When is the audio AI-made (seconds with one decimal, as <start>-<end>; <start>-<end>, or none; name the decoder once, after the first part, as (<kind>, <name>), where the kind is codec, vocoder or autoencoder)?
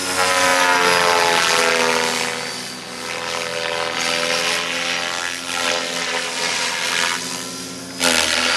none